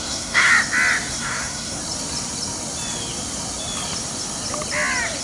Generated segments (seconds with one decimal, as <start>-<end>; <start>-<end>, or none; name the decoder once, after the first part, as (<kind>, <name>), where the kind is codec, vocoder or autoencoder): 0.0-0.5 (codec, SNAC); 1.1-1.8